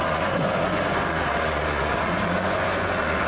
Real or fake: fake